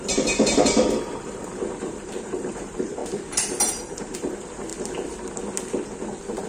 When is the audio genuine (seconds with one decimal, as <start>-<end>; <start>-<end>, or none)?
3.0-3.7; 4.7-6.5